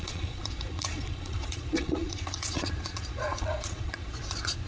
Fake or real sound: fake